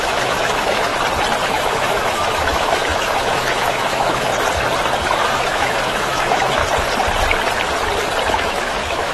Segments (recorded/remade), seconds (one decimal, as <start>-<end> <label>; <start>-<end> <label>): 0.0-0.9 remade; 0.9-1.5 recorded; 1.5-4.3 remade; 4.3-5.0 recorded; 5.0-6.6 remade; 6.6-8.3 recorded; 8.3-9.1 remade